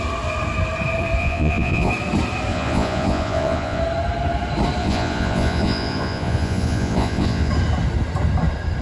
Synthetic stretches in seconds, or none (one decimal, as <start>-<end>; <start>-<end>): 1.2-1.9; 2.5-3.8; 4.8-7.5